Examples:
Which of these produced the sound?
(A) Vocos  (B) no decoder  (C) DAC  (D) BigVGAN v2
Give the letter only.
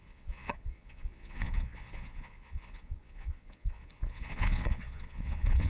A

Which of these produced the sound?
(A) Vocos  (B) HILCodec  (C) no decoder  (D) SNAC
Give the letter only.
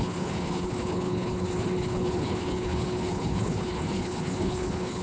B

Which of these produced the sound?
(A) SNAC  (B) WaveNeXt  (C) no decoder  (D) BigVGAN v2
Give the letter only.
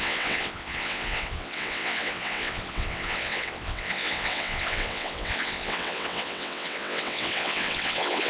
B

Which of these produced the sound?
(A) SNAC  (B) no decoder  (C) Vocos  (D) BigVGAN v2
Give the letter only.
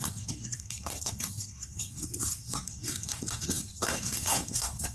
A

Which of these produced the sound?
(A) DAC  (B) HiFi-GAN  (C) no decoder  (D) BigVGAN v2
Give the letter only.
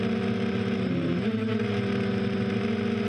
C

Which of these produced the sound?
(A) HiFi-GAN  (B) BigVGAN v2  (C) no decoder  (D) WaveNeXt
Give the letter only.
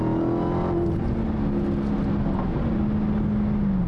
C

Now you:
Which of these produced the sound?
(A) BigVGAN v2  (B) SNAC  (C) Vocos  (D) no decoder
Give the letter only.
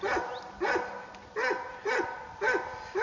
D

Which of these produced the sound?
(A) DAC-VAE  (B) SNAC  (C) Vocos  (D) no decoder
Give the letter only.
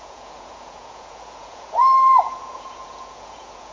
C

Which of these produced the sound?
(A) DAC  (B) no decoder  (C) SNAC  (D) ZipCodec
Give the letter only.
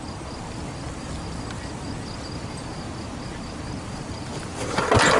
B